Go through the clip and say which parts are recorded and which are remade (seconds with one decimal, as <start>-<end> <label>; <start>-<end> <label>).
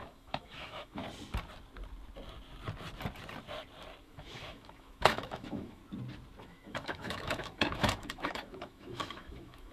0.0-1.0 remade; 1.0-4.0 recorded; 4.0-5.8 remade; 5.8-6.4 recorded; 6.4-9.7 remade